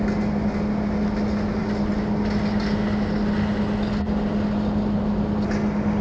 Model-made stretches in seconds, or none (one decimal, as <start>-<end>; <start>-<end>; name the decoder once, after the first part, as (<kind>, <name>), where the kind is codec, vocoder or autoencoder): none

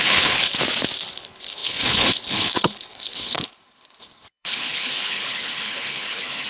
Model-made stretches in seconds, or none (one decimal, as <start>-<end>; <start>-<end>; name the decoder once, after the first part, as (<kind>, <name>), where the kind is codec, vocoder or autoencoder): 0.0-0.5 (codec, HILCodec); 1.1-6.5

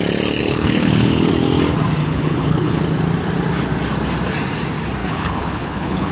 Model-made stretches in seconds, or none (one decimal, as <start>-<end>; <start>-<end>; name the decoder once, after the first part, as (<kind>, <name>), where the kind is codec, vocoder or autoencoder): 0.4-1.3 (codec, HILCodec); 2.0-2.8; 5.0-6.1

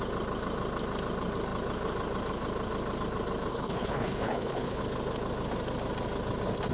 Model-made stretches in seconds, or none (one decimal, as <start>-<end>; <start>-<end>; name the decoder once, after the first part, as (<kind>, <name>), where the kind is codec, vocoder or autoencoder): 3.5-4.8 (codec, HILCodec)

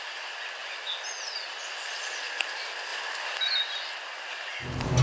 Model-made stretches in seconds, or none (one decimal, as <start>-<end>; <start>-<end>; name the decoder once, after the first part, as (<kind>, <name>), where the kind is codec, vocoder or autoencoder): none

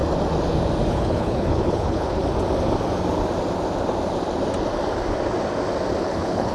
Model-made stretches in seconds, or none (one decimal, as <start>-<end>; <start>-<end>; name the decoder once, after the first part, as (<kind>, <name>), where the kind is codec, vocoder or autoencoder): 0.9-2.2 (codec, HILCodec); 6.0-6.5